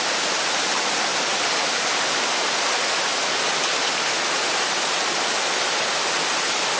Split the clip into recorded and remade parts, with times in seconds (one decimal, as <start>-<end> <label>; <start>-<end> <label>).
0.0-6.8 recorded